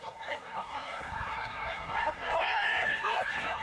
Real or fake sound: fake